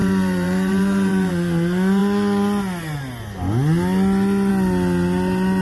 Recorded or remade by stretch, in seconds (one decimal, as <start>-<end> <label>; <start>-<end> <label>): 0.0-1.3 remade; 1.3-5.6 recorded